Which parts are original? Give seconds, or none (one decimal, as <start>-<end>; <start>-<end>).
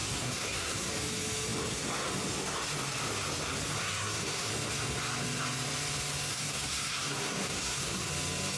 0.9-3.8; 4.5-6.3; 8.1-8.6